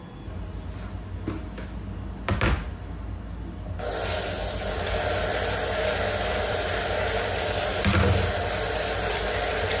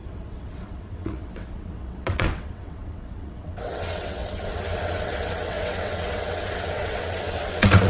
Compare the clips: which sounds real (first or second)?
first